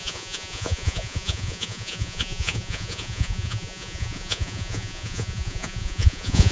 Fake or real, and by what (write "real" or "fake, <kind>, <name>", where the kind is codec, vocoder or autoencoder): fake, vocoder, Vocos